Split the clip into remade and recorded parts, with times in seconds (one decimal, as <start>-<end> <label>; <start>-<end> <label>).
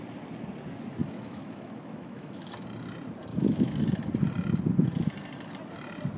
0.0-1.0 recorded; 1.0-2.5 remade; 2.5-3.3 recorded; 3.3-3.8 remade; 3.8-6.2 recorded